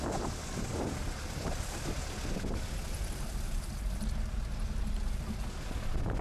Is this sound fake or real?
real